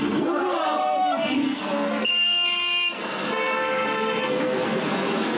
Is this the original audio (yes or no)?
no